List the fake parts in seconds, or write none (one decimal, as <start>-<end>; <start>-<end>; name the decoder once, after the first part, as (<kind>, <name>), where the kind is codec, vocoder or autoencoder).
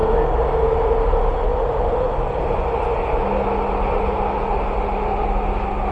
none